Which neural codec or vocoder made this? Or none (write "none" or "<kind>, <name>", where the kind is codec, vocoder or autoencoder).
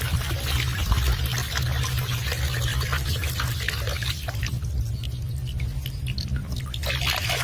none